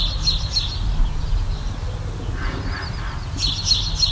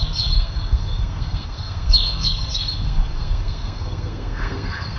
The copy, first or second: second